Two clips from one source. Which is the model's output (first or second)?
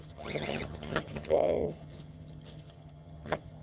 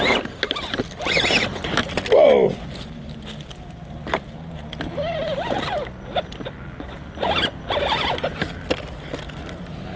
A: first